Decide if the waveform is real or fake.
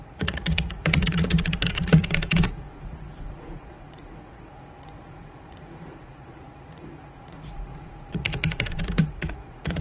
fake